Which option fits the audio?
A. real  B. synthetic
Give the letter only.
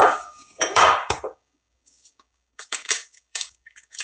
B